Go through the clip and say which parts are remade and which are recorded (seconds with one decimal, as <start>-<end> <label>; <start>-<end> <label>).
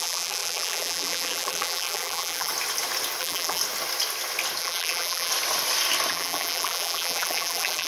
0.0-2.5 remade; 2.5-3.2 recorded; 3.2-3.6 remade; 3.6-4.6 recorded; 4.6-5.3 remade; 5.3-6.1 recorded; 6.1-7.9 remade